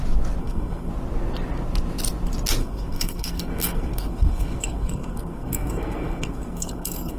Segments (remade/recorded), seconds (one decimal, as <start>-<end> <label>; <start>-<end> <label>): 0.0-0.4 recorded; 0.4-0.9 remade; 0.9-2.6 recorded; 2.6-7.2 remade